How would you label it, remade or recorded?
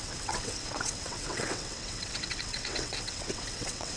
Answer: remade